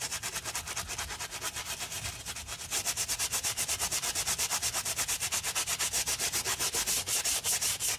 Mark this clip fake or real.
fake